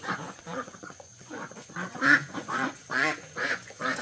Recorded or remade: remade